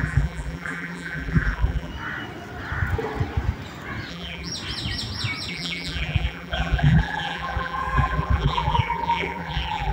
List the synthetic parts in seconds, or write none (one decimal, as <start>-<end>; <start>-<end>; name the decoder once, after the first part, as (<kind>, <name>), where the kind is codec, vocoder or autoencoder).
0.0-1.9 (vocoder, BigVGAN v2); 4.1-4.5; 5.5-9.9